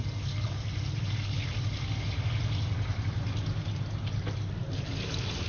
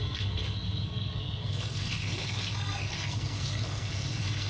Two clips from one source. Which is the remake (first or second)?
second